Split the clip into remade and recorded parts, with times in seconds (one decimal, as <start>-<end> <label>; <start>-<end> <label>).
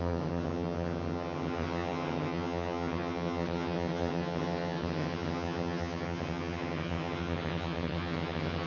0.0-8.7 remade